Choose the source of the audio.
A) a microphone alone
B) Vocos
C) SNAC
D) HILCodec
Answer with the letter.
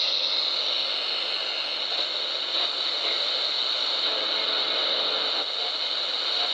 A